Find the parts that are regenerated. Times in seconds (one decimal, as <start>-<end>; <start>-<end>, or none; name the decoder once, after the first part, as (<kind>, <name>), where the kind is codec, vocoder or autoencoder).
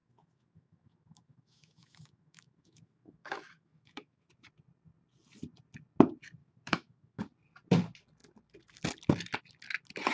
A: 0.0-4.3 (autoencoder, DAC-VAE); 6.4-7.2